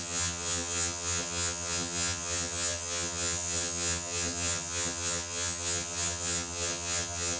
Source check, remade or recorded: remade